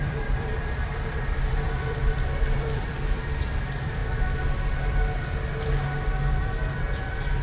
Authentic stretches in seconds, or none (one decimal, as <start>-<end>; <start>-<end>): 4.0-6.3

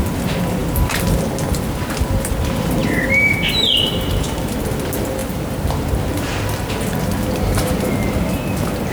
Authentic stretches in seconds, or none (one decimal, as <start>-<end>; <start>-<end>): 0.0-2.8; 4.6-8.9

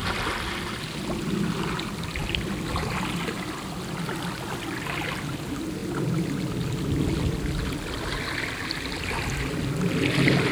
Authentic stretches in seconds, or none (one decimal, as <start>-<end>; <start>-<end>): 0.0-10.5

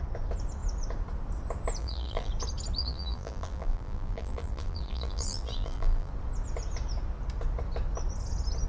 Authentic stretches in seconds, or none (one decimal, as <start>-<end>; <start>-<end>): 0.0-1.8; 2.3-2.8; 6.1-8.7

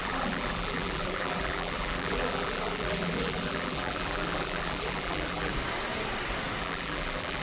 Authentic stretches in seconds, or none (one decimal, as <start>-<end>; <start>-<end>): 5.5-6.6

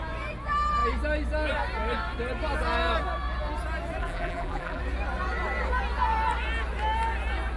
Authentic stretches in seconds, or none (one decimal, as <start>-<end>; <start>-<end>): 0.0-4.0; 4.8-7.6

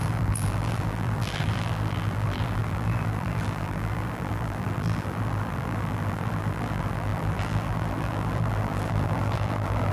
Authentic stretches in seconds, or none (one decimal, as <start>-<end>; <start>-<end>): none

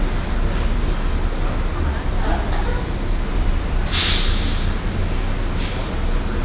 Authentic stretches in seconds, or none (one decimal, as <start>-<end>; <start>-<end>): 0.0-3.3; 3.8-6.4